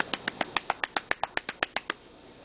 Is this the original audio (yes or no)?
yes